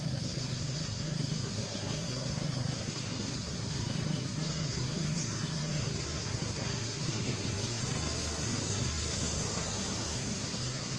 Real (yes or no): no